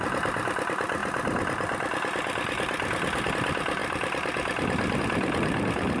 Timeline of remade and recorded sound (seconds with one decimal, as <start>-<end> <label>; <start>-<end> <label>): 0.0-6.0 remade